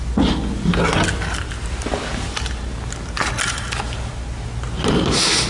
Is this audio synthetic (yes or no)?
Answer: no